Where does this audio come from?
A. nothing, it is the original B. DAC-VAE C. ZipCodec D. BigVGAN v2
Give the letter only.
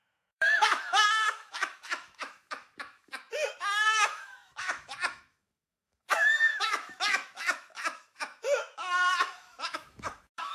B